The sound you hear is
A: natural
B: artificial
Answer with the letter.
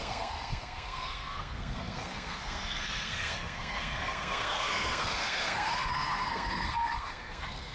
B